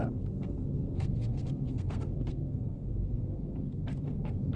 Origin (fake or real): fake